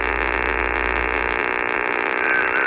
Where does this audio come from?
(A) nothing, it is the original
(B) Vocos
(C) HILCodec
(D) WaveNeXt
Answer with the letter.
A